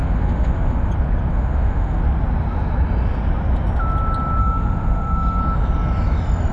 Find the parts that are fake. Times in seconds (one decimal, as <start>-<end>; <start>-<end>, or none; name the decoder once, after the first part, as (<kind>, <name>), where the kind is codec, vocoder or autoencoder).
0.0-0.9 (autoencoder, DAC-VAE); 1.3-2.0; 4.4-5.4